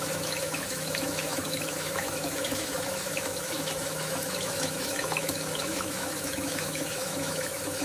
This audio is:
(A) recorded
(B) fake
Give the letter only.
B